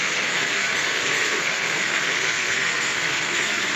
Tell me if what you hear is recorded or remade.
remade